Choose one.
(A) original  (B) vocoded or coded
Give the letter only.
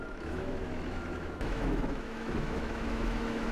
B